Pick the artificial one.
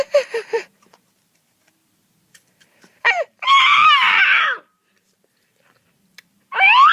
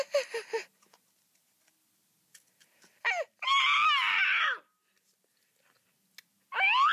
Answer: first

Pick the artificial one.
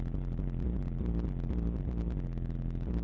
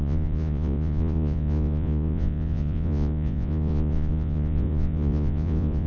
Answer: second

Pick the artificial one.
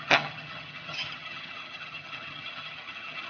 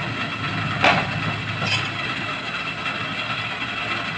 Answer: first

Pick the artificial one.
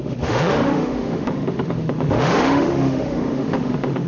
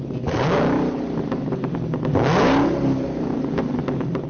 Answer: first